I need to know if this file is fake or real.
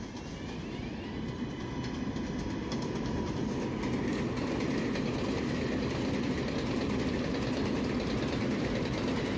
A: real